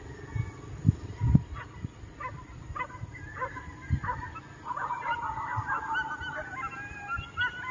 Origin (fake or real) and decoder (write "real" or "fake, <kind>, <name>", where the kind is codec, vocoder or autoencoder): real